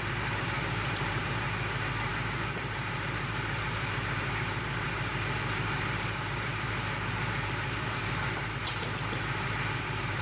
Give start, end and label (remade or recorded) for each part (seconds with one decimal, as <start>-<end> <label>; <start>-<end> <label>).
0.0-10.2 remade